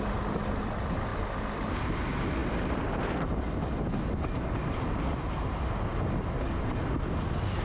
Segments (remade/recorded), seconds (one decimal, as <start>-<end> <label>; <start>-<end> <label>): 0.0-7.6 recorded